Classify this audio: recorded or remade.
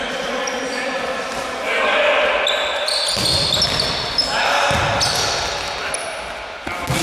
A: recorded